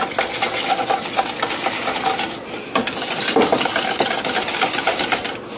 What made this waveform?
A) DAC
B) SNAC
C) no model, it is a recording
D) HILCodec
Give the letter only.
C